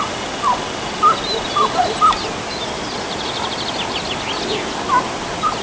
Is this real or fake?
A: real